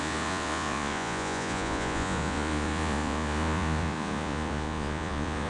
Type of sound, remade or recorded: remade